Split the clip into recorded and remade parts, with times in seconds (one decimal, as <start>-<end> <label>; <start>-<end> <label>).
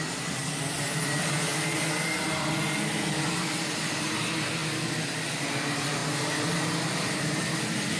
0.0-1.5 remade; 1.5-3.4 recorded; 3.4-4.6 remade; 4.6-5.2 recorded; 5.2-6.0 remade; 6.0-6.8 recorded; 6.8-8.0 remade